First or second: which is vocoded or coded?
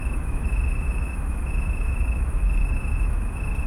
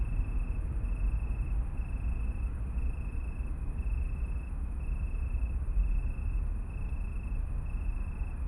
first